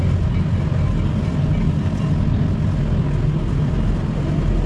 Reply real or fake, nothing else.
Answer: real